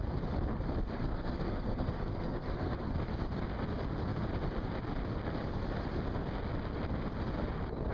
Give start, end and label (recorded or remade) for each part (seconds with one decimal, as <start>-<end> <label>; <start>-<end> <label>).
0.0-1.0 recorded; 1.0-2.9 remade; 2.9-7.9 recorded